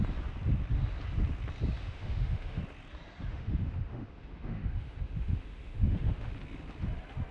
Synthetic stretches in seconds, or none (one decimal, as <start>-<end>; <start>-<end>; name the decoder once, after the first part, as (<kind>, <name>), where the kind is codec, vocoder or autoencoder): 1.8-2.6 (autoencoder, DAC-VAE); 3.3-6.3